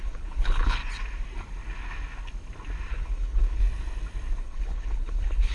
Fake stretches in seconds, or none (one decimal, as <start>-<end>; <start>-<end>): 0.0-0.8; 2.9-3.6; 4.4-5.5